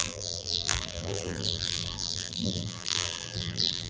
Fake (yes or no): yes